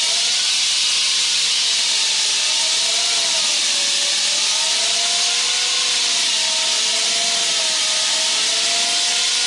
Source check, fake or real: real